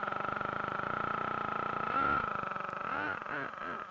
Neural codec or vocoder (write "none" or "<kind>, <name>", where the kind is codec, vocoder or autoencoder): none